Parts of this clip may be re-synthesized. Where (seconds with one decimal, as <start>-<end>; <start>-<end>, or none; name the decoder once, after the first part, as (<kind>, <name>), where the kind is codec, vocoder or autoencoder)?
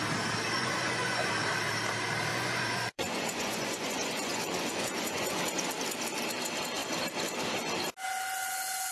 0.6-1.3 (vocoder, Vocos); 2.3-5.4